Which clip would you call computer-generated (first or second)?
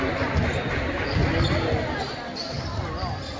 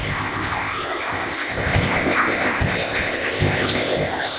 second